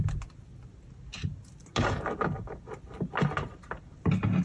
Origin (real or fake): real